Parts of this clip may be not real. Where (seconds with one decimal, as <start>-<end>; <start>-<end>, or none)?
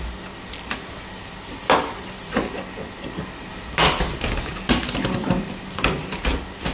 none